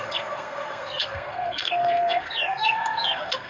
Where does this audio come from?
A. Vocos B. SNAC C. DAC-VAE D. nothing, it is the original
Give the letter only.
B